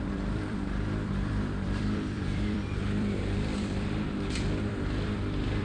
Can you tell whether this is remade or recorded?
remade